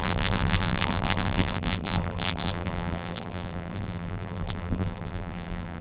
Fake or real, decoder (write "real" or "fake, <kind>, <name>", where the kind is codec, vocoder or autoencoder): fake, vocoder, BigVGAN v2